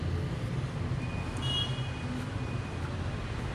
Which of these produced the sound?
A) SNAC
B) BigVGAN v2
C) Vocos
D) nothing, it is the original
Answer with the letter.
D